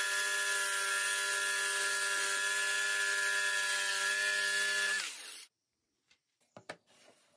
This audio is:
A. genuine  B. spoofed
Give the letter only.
A